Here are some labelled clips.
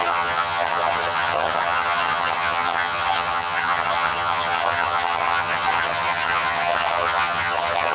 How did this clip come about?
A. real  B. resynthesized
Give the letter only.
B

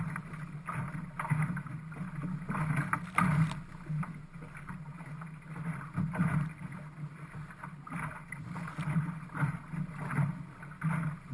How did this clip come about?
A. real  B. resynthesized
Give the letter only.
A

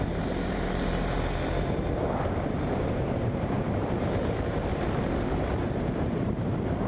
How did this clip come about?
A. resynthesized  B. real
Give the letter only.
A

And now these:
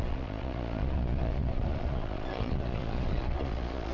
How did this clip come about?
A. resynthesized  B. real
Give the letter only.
A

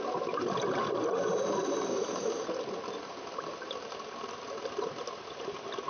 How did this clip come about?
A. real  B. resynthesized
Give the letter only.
A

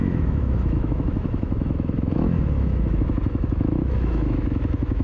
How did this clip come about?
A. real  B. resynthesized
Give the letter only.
B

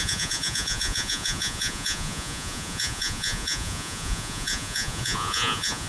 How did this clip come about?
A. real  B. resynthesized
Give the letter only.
B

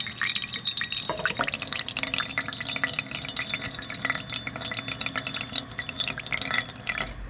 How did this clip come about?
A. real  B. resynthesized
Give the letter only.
A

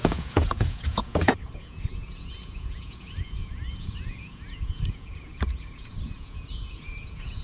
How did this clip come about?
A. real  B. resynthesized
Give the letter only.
B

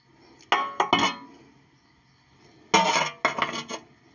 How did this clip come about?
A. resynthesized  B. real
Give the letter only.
B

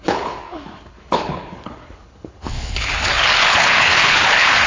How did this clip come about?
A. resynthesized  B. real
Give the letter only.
A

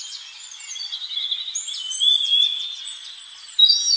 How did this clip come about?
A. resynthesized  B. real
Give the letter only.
B